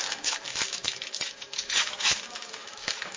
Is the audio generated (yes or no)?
yes